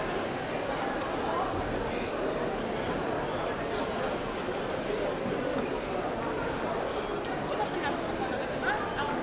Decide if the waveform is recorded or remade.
recorded